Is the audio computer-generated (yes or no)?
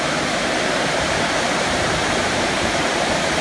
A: yes